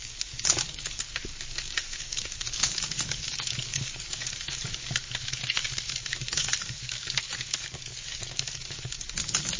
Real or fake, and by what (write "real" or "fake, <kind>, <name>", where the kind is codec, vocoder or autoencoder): fake, codec, DAC